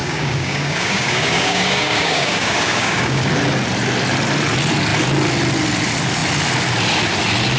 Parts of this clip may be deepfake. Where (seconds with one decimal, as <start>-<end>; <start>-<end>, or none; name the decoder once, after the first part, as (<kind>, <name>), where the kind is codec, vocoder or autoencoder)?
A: 0.0-3.3 (codec, DAC)